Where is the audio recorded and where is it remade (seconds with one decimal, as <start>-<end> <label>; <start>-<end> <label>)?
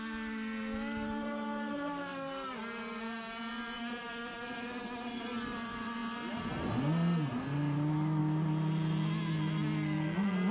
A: 0.0-10.5 recorded